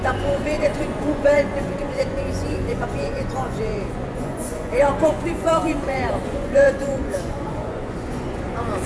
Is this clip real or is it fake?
fake